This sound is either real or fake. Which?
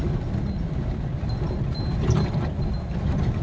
real